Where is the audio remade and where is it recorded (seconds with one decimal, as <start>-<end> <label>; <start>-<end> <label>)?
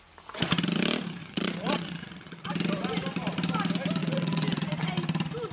0.0-1.2 recorded; 1.2-2.5 remade; 2.5-4.0 recorded; 4.0-4.9 remade; 4.9-5.5 recorded